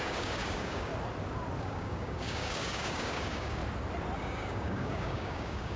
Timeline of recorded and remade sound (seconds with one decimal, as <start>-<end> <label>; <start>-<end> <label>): 0.0-0.9 remade; 0.9-1.6 recorded; 1.6-3.6 remade; 3.6-4.2 recorded; 4.2-5.8 remade